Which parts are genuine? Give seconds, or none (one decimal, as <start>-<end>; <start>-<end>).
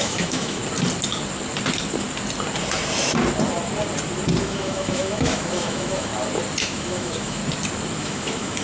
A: 0.6-4.4; 6.1-6.6; 7.4-8.0